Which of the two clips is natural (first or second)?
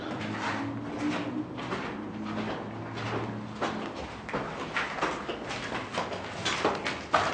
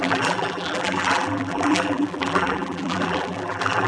first